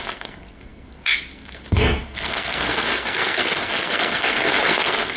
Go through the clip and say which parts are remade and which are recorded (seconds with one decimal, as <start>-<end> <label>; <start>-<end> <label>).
0.0-5.2 remade